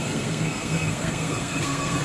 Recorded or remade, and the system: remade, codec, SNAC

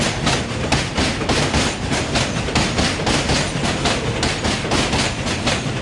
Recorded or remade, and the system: recorded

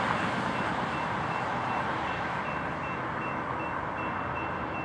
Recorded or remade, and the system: remade, vocoder, BigVGAN v2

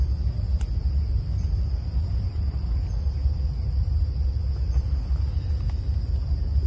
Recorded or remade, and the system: recorded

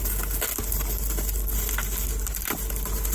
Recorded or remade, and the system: recorded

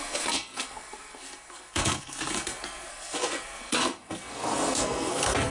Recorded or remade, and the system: remade, codec, SNAC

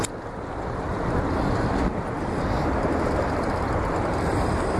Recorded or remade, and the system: recorded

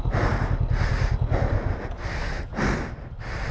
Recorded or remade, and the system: recorded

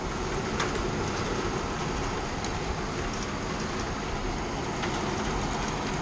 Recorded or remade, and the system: recorded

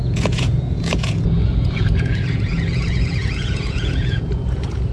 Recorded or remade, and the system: remade, vocoder, Vocos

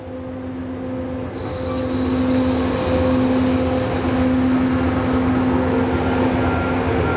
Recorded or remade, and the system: recorded